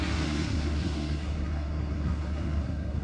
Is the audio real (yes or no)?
no